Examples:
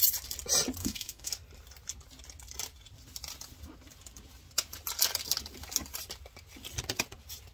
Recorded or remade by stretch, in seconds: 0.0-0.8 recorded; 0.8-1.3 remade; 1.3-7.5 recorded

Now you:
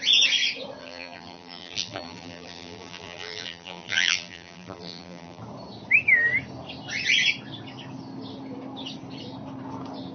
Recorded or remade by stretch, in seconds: 0.0-0.8 recorded; 0.8-5.4 remade; 5.4-10.1 recorded

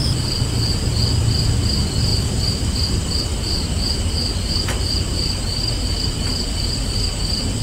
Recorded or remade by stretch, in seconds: 0.0-7.6 recorded

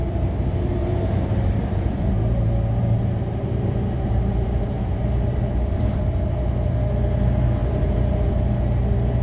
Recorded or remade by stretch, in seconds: 0.0-0.8 recorded; 0.8-2.4 remade; 2.4-2.8 recorded; 2.8-6.1 remade; 6.1-7.6 recorded; 7.6-8.3 remade; 8.3-9.2 recorded